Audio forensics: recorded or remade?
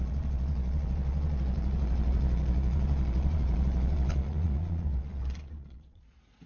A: remade